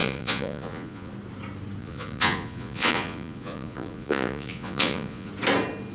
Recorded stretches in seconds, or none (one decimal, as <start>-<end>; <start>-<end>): 1.1-1.8; 5.3-5.9